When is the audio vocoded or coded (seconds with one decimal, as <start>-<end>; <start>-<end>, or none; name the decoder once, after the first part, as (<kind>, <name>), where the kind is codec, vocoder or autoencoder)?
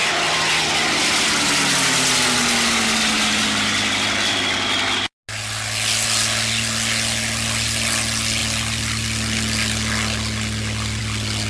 none